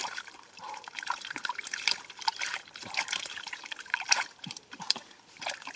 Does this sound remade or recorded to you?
remade